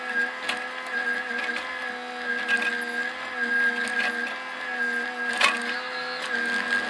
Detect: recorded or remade recorded